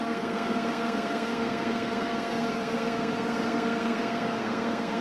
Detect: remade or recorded remade